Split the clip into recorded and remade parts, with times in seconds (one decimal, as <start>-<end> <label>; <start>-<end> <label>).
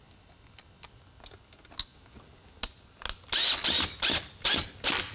0.0-5.1 recorded